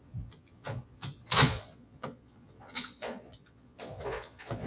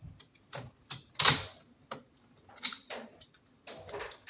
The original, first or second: second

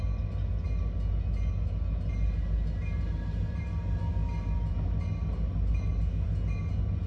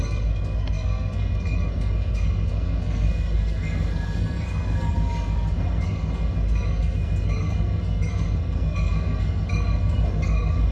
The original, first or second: first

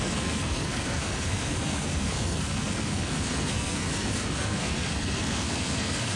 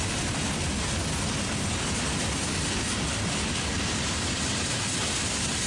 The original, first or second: second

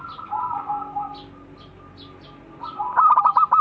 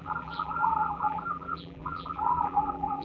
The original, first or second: first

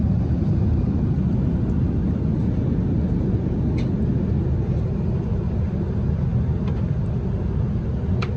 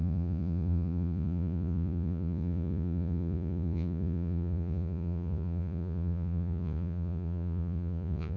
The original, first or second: first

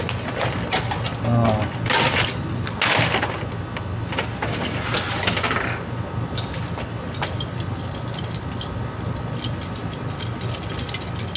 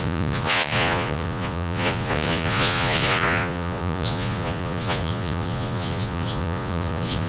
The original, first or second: first